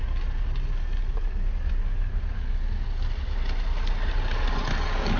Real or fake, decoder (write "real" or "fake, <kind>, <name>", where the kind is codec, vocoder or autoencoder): real